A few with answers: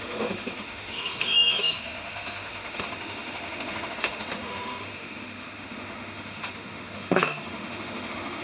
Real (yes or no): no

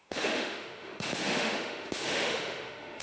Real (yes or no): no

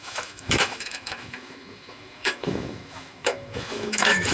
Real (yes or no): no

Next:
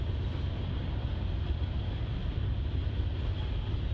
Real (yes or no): yes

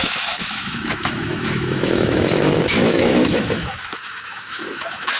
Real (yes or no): no